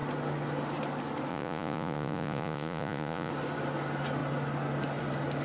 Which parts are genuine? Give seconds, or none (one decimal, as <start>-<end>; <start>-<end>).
0.0-1.3; 3.3-5.4